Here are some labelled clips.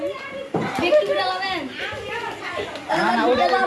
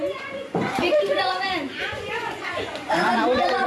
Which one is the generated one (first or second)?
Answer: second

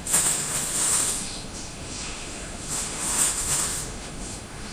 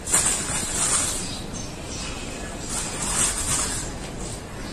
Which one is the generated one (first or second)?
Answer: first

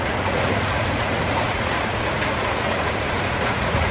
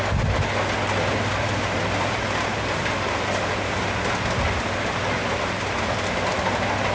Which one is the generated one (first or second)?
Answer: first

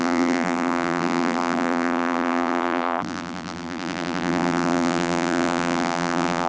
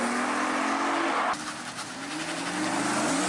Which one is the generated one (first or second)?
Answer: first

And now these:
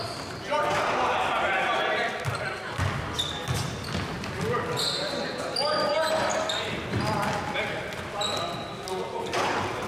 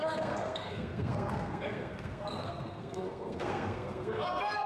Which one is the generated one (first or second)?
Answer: second